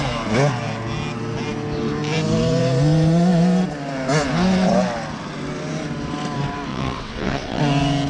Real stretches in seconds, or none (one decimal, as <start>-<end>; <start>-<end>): 0.0-6.7; 7.6-8.1